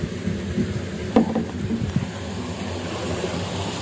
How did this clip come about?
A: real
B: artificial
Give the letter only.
A